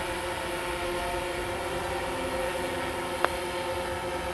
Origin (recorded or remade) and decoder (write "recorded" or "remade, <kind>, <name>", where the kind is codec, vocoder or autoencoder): recorded